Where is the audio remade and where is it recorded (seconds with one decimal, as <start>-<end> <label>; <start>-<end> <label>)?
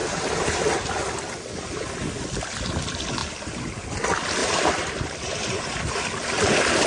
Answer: 0.0-3.2 recorded; 3.2-4.0 remade; 4.0-4.4 recorded; 4.4-6.0 remade; 6.0-6.9 recorded